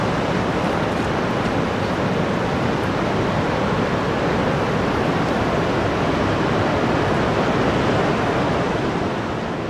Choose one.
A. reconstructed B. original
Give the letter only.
B